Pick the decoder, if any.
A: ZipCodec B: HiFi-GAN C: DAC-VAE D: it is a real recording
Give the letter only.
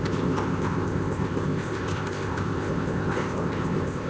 A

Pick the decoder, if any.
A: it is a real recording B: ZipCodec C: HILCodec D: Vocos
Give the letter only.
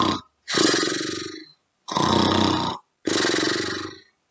A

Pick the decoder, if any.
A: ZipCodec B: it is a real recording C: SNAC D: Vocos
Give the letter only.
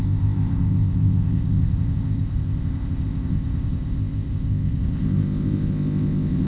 A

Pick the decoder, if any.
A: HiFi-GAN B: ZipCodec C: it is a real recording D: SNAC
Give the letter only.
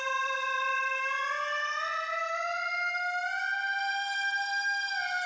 C